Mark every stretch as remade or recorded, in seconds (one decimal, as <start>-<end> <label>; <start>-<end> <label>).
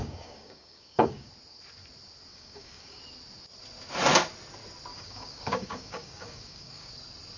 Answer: 0.0-1.3 remade; 1.3-2.3 recorded; 2.3-3.0 remade; 3.0-4.9 recorded; 4.9-6.9 remade; 6.9-7.4 recorded